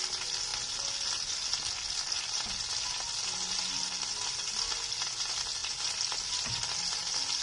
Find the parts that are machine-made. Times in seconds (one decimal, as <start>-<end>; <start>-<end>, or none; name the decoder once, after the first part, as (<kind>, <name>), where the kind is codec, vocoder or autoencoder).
none